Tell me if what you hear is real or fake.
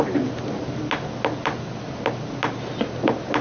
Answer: real